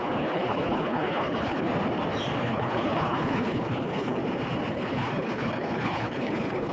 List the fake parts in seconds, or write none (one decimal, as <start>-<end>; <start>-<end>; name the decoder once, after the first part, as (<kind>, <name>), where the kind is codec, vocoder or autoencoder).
0.0-1.7 (codec, HILCodec); 2.4-4.2; 4.7-6.7